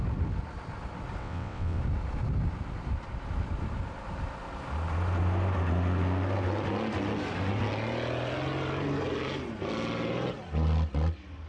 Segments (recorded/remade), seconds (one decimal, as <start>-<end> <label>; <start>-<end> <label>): 0.0-1.2 recorded; 1.2-1.8 remade; 1.8-11.5 recorded